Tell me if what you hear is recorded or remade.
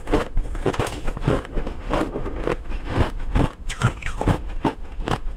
remade